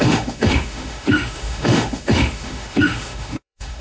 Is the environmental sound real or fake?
fake